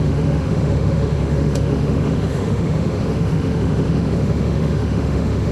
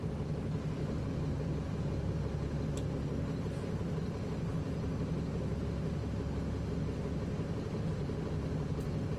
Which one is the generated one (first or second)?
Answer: first